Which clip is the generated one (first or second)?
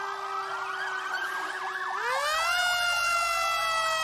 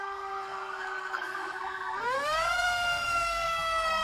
second